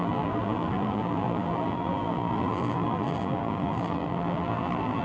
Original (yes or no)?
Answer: no